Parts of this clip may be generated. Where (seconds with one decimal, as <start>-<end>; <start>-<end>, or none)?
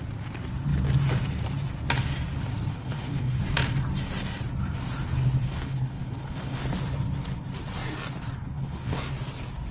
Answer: 2.7-3.4; 5.4-6.6; 8.4-9.0